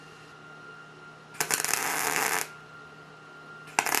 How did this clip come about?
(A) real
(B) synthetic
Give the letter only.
A